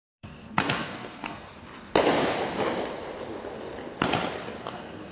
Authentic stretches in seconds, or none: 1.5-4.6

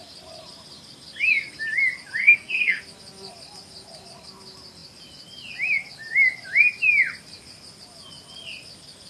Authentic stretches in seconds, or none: 0.0-2.2; 2.8-9.1